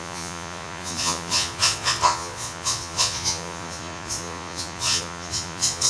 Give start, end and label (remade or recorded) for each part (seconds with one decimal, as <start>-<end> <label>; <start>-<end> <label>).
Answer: 0.0-5.9 remade